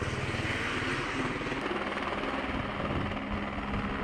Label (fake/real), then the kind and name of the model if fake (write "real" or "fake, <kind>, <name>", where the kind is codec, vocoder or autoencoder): real